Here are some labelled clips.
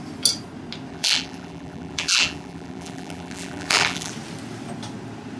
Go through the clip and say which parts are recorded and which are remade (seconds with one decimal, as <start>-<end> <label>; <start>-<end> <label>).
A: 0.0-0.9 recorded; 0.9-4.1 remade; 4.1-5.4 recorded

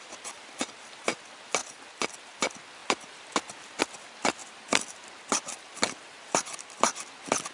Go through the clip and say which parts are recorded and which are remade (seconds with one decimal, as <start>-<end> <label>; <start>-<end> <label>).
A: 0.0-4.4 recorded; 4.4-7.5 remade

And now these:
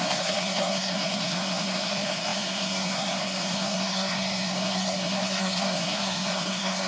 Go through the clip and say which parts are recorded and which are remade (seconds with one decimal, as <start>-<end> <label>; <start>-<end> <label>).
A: 0.0-6.9 remade

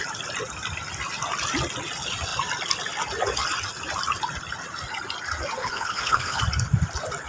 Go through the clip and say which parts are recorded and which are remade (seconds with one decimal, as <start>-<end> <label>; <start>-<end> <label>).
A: 0.0-5.6 recorded; 5.6-6.4 remade; 6.4-7.3 recorded

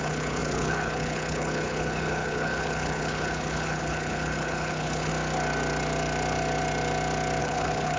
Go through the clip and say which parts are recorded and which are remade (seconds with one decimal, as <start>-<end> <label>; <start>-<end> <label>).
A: 0.0-5.1 remade; 5.1-7.4 recorded; 7.4-8.0 remade